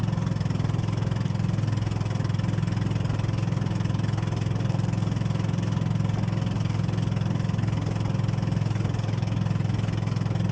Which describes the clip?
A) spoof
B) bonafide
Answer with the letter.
B